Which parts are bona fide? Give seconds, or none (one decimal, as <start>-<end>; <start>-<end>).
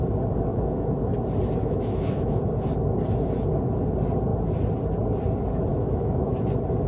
0.0-0.5; 1.0-1.6; 2.4-5.7; 6.3-6.9